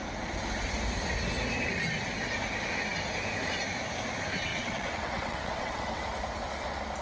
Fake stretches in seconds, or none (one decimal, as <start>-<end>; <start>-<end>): 4.5-6.0